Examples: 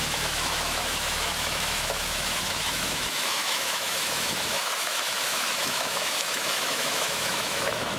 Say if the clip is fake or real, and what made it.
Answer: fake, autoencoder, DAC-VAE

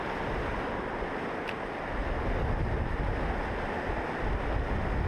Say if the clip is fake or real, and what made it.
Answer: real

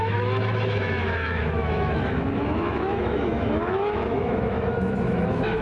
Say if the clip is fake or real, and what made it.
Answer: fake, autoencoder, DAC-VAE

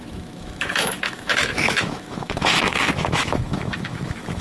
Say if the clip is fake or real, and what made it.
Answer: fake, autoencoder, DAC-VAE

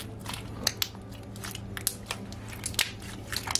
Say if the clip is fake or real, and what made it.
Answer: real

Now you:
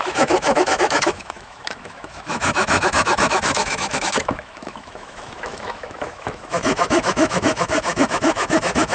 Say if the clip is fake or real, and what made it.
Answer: fake, autoencoder, DAC-VAE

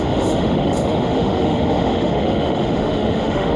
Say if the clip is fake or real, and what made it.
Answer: fake, autoencoder, DAC-VAE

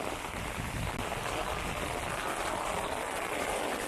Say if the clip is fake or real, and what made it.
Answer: real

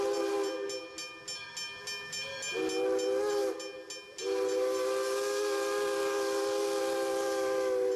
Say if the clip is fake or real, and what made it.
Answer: real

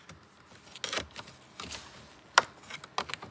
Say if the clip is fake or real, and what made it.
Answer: real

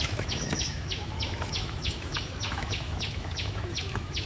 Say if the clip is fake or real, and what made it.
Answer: fake, autoencoder, DAC-VAE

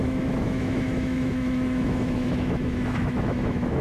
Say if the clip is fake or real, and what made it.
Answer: fake, autoencoder, DAC-VAE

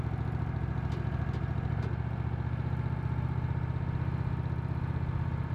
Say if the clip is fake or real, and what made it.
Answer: real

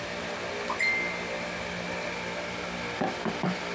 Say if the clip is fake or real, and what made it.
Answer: real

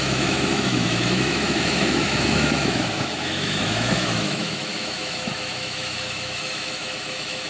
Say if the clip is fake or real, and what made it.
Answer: fake, autoencoder, DAC-VAE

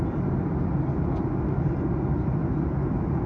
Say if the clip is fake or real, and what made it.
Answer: real